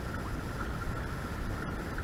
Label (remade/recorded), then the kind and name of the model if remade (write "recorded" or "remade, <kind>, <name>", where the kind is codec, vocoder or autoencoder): recorded